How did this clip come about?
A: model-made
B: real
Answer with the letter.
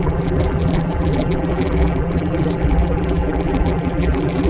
A